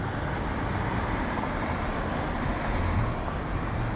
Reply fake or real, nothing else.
real